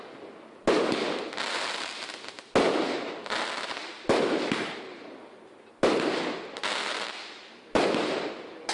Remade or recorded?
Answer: recorded